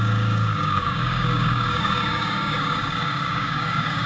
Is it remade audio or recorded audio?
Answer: remade